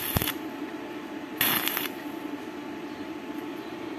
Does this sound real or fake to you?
fake